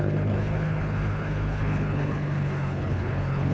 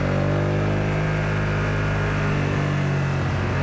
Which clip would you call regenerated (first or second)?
first